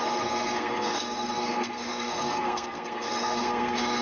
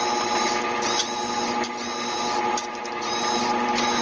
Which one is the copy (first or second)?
first